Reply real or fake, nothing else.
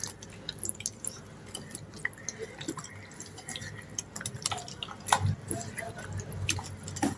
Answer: real